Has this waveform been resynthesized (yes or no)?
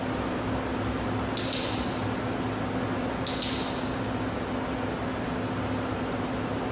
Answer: no